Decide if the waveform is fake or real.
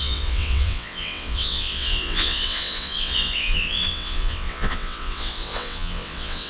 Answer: fake